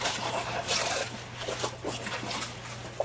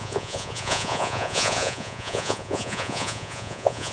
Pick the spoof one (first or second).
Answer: second